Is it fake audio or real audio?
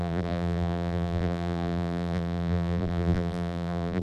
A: fake